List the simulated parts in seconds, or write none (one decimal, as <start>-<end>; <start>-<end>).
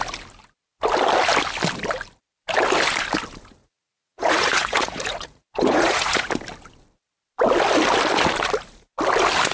3.6-6.3